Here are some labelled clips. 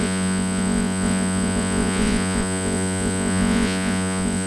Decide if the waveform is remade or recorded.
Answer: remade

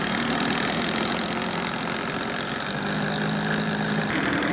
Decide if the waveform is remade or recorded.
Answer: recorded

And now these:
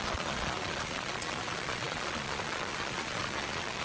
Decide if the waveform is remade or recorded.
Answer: remade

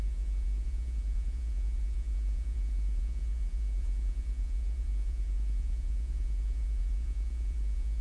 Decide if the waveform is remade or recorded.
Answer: remade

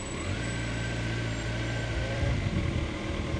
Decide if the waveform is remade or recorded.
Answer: recorded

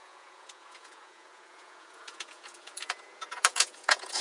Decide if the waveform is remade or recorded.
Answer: remade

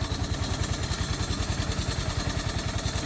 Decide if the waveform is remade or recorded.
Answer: recorded